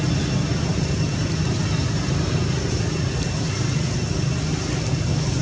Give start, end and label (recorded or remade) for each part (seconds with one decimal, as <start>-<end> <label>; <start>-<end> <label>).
0.0-5.4 recorded